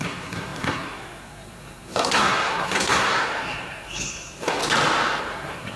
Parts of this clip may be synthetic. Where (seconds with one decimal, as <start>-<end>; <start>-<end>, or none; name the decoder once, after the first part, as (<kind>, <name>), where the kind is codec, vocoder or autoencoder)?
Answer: 0.0-4.6 (codec, SNAC); 5.2-5.8